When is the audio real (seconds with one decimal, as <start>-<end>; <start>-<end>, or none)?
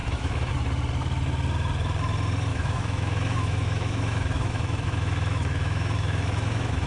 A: 0.5-2.5